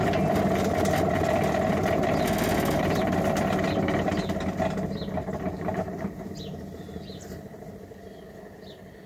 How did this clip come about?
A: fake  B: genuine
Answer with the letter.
B